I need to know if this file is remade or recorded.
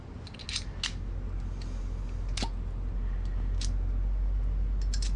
recorded